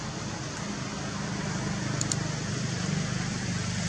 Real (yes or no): yes